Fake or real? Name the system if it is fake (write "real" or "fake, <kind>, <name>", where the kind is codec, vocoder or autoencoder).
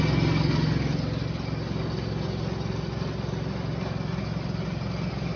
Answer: real